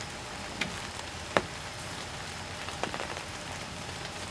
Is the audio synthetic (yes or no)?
no